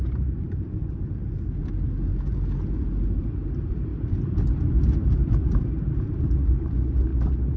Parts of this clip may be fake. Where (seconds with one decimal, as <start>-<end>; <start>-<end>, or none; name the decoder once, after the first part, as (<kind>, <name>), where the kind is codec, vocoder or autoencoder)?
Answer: 0.0-1.2 (vocoder, BigVGAN v2); 3.2-3.9; 5.4-7.6